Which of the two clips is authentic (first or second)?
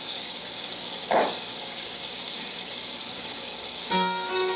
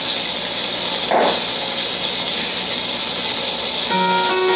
second